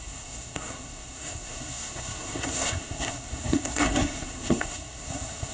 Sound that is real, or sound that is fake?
fake